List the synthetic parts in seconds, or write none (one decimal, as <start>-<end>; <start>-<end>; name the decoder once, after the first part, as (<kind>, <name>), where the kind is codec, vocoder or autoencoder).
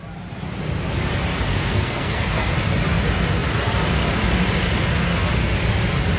1.5-2.5 (codec, SNAC)